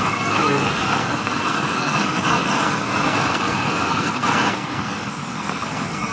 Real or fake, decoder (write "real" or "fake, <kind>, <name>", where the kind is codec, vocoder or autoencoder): fake, codec, SNAC